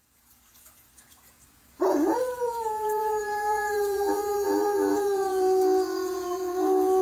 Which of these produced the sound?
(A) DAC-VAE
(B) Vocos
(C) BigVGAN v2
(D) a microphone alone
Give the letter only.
B